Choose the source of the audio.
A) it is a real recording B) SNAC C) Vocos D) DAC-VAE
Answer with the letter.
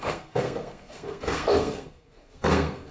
B